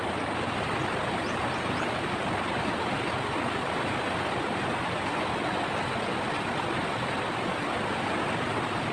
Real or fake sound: real